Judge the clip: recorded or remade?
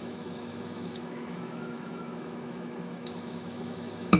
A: remade